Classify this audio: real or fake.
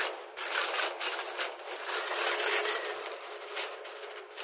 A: real